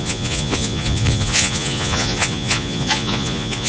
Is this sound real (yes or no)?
no